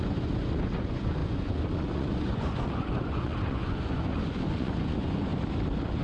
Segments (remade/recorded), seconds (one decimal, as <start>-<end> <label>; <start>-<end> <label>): 0.0-5.3 remade; 5.3-6.0 recorded

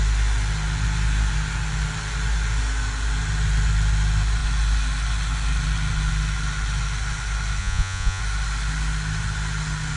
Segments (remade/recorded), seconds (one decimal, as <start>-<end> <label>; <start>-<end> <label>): 0.0-7.6 recorded; 7.6-8.2 remade; 8.2-10.0 recorded

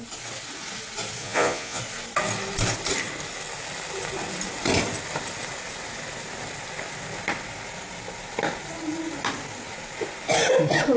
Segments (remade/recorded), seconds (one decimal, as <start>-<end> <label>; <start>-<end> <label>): 0.0-1.2 recorded; 1.2-1.8 remade; 1.8-11.0 recorded